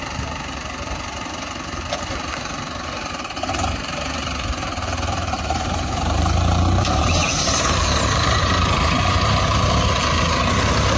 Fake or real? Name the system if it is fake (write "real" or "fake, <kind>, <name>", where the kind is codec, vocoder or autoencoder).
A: fake, vocoder, BigVGAN v2